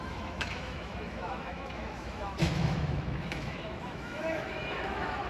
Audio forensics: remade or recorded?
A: remade